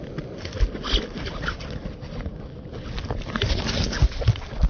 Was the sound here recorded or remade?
recorded